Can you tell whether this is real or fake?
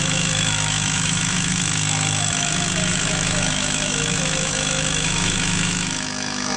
fake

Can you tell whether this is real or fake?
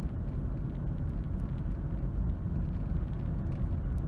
real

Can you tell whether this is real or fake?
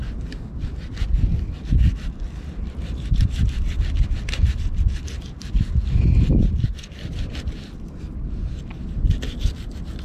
real